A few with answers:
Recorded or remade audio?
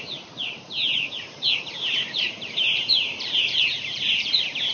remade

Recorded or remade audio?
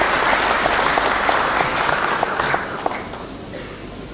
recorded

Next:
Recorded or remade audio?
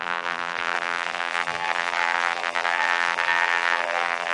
remade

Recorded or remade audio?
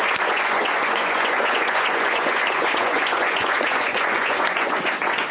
remade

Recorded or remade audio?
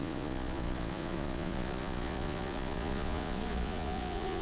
remade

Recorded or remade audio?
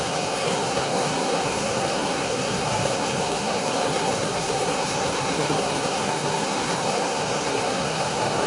remade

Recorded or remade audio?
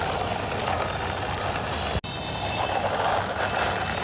recorded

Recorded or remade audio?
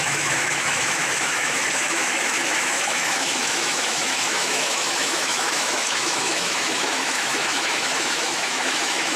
remade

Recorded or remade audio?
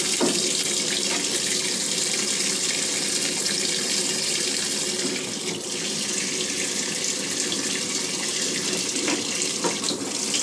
recorded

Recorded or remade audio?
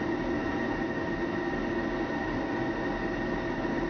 recorded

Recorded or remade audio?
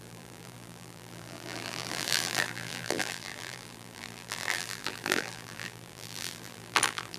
remade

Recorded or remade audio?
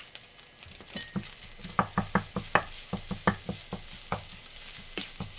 recorded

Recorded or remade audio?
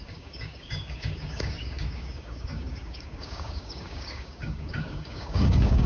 remade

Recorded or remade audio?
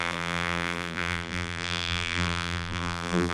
remade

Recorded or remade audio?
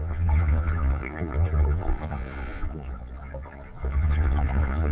remade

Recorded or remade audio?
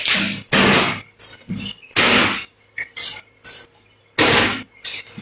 recorded